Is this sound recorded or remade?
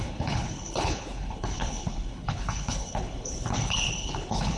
remade